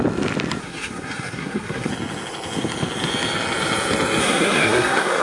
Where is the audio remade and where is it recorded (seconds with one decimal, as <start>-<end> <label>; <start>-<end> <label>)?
0.0-0.6 recorded; 0.6-1.9 remade; 1.9-4.2 recorded; 4.2-5.2 remade